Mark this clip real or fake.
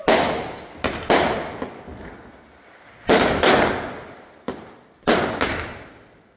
real